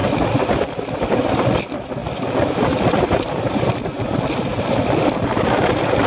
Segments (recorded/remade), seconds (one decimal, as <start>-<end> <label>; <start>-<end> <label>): 0.0-6.1 recorded